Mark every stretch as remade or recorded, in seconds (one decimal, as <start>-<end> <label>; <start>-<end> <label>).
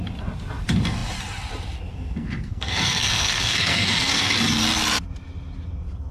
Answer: 0.0-1.9 recorded; 1.9-4.3 remade; 4.3-6.1 recorded